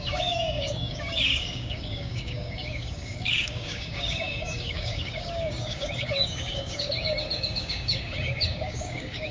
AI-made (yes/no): yes